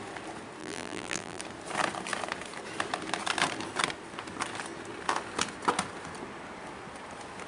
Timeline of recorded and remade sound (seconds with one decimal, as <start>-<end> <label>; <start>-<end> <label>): 0.0-0.6 recorded; 0.6-1.4 remade; 1.4-7.5 recorded